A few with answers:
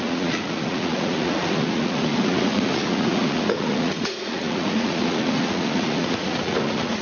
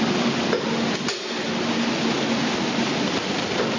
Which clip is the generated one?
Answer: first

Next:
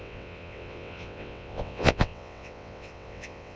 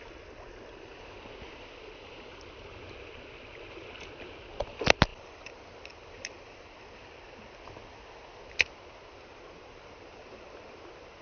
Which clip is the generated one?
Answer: first